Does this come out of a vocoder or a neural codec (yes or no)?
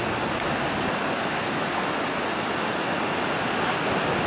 no